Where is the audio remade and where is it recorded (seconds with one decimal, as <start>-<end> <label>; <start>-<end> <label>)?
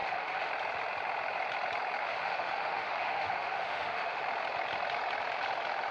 0.0-0.5 remade; 0.5-2.0 recorded; 2.0-4.2 remade; 4.2-5.9 recorded